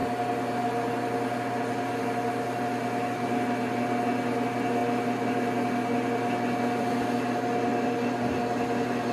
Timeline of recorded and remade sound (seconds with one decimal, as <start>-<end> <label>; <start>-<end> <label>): 0.0-7.7 recorded; 7.7-8.4 remade; 8.4-9.1 recorded